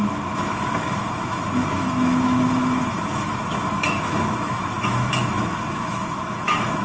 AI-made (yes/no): yes